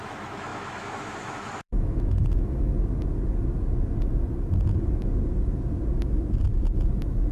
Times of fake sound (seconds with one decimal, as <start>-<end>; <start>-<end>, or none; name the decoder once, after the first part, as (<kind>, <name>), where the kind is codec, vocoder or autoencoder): 0.0-2.7 (autoencoder, DAC-VAE)